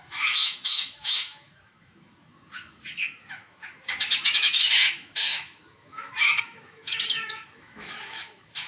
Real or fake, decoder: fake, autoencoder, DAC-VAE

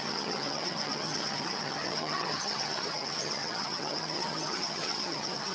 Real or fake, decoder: fake, vocoder, HiFi-GAN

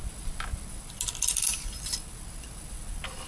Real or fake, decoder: real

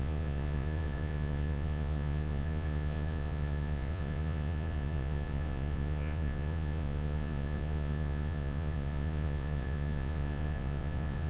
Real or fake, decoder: fake, vocoder, Vocos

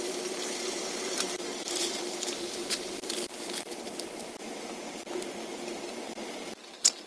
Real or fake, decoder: fake, vocoder, BigVGAN v2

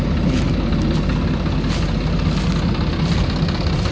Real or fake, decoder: real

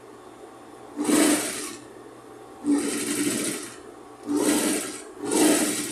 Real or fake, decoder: real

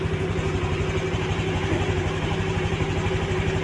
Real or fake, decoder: fake, vocoder, BigVGAN v2